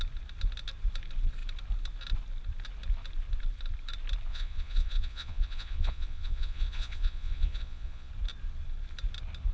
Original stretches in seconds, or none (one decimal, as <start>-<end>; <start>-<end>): 0.0-4.3; 8.1-9.5